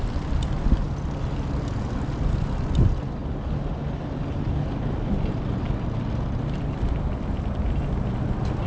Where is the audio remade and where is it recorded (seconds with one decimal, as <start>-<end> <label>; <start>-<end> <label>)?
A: 0.0-8.7 recorded